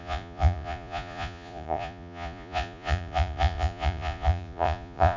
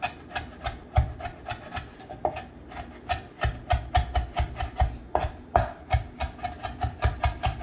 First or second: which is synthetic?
first